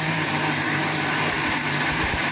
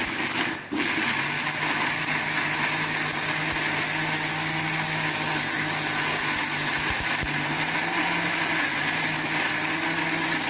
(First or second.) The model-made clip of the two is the first